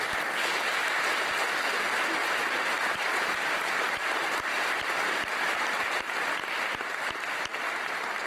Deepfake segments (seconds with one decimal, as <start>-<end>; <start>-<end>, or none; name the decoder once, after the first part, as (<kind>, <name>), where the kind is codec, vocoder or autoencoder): 2.2-6.0 (vocoder, BigVGAN v2)